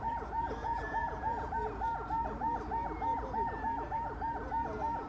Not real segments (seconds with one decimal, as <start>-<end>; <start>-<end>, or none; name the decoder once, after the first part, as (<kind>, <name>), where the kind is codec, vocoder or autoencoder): 0.6-1.5 (vocoder, Vocos)